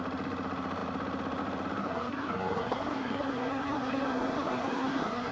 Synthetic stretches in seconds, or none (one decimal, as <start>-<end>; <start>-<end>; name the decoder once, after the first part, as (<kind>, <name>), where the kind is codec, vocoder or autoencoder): 1.8-5.3 (codec, SNAC)